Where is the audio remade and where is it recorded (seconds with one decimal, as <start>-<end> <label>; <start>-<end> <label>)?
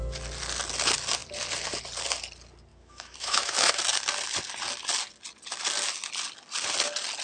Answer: 0.0-2.7 recorded; 2.7-3.8 remade; 3.8-7.2 recorded